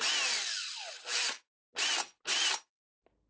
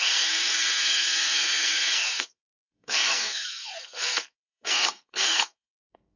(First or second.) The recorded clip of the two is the first